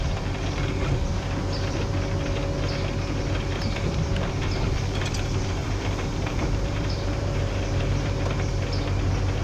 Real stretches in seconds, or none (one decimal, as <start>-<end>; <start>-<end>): 0.0-5.6; 8.1-9.4